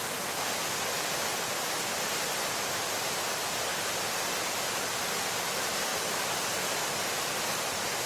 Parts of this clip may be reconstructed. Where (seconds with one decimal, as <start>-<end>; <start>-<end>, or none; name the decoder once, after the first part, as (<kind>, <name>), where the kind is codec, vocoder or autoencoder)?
none